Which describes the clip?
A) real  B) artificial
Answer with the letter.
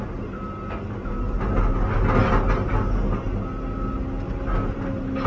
A